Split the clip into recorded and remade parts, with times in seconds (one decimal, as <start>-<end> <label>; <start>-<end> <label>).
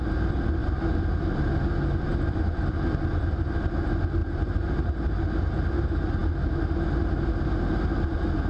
0.0-4.2 recorded; 4.2-5.1 remade; 5.1-8.5 recorded